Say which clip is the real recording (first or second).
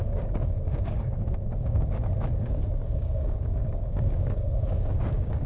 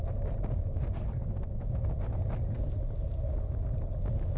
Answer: second